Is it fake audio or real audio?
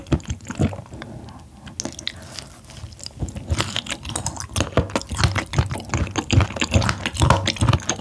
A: real